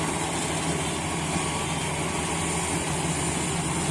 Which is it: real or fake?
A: real